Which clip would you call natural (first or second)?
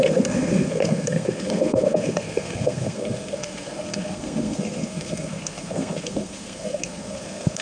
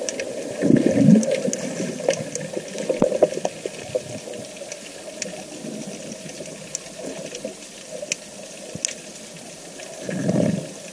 second